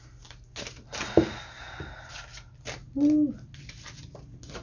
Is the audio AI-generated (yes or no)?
no